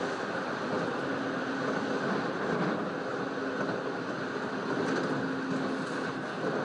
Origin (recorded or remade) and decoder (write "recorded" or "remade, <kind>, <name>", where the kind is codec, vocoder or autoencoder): recorded